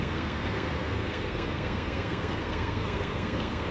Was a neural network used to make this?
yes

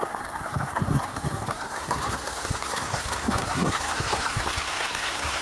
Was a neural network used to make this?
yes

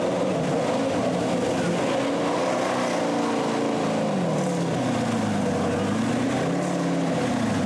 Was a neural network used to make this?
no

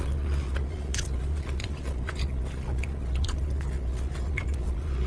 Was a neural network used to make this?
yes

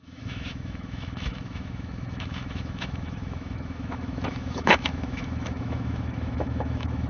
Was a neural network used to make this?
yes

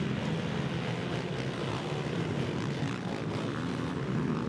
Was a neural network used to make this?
no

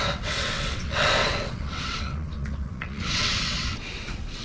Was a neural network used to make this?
yes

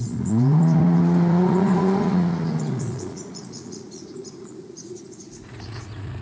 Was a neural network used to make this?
yes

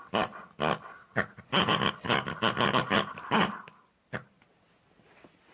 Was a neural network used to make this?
no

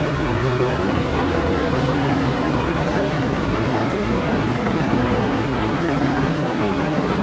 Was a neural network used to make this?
yes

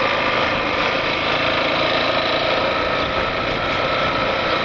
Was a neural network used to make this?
yes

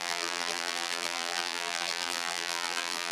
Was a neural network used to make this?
yes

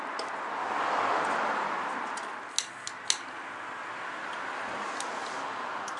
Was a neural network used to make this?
no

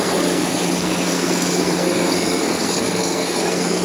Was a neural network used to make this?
yes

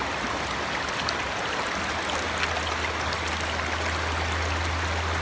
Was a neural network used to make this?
no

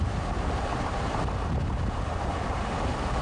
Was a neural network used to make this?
yes